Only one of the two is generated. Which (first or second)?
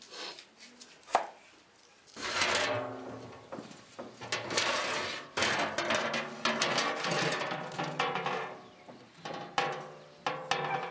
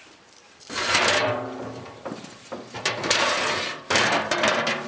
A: second